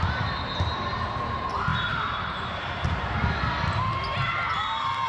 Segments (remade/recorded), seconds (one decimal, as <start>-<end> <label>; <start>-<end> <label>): 0.0-5.1 recorded

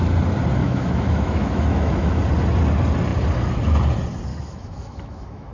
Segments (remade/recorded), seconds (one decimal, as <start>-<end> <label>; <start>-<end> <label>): 0.0-0.6 recorded; 0.6-2.2 remade; 2.2-4.3 recorded; 4.3-5.5 remade

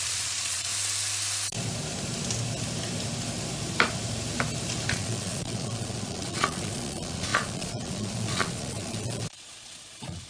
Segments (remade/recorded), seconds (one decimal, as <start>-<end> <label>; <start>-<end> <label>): 0.0-0.7 remade; 0.7-4.9 recorded; 4.9-10.3 remade

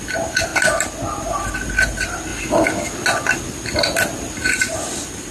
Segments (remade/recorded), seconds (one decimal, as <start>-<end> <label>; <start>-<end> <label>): 0.0-0.5 remade; 0.5-1.2 recorded; 1.2-2.3 remade; 2.3-4.5 recorded; 4.5-5.3 remade

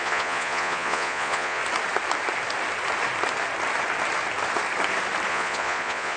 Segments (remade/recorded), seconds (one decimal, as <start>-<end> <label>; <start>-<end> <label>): 0.0-1.6 remade; 1.6-5.3 recorded; 5.3-6.2 remade